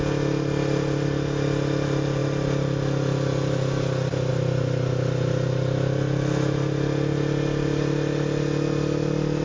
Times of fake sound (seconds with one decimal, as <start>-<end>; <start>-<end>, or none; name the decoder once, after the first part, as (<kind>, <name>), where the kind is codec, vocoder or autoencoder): none